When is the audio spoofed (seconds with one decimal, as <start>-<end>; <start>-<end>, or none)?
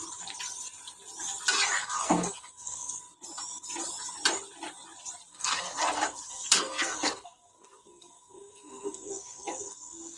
1.8-3.0; 5.3-10.2